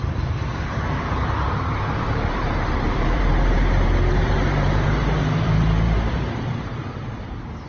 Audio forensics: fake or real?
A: fake